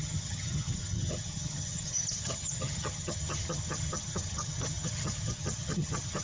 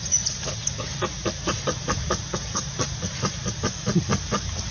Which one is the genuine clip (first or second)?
second